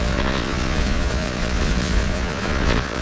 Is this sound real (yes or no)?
no